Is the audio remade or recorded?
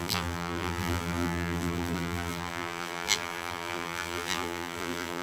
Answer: remade